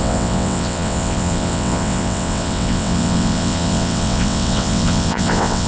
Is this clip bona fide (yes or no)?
no